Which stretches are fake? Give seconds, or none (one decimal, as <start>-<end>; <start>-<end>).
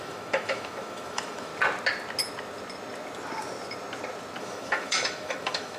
0.0-1.5; 4.4-5.8